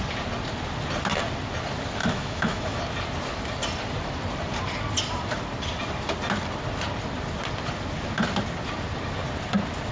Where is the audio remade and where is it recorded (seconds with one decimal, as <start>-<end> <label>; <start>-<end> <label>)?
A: 0.0-2.0 recorded; 2.0-2.8 remade; 2.8-9.9 recorded